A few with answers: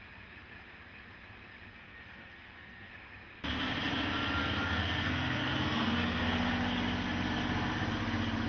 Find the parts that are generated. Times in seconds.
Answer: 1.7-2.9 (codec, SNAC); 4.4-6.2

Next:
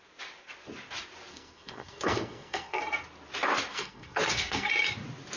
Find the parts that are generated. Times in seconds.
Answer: 1.3-2.8 (codec, SNAC); 3.7-4.7

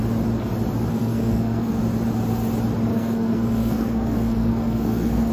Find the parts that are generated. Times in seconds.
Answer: 0.9-1.8 (codec, SNAC); 2.9-5.3

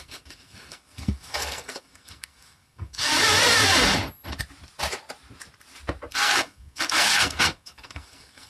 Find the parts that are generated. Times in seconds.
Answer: 0.0-3.1 (codec, SNAC); 6.1-8.5